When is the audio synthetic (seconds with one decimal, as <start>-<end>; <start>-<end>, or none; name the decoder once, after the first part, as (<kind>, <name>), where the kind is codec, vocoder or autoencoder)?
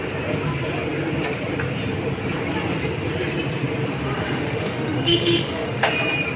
4.0-5.9 (autoencoder, DAC-VAE)